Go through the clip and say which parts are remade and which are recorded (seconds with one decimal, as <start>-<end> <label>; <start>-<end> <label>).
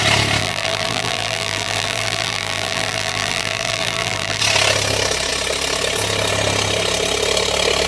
0.0-0.4 recorded; 0.4-4.4 remade; 4.4-7.9 recorded